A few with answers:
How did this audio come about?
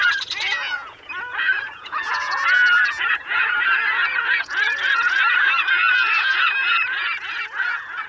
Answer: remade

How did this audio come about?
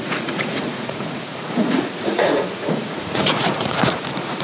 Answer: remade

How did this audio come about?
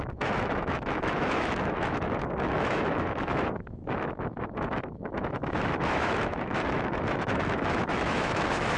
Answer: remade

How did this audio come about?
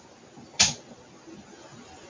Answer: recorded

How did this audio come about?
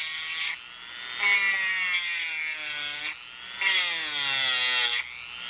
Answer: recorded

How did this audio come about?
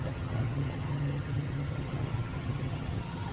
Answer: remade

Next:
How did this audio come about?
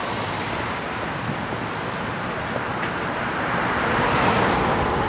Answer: recorded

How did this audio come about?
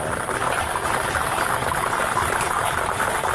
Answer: recorded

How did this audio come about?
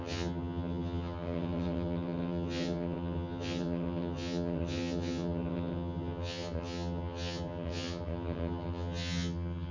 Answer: remade